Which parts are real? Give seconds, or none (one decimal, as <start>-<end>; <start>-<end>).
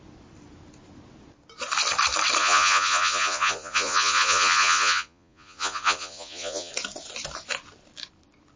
0.0-2.4; 6.7-8.6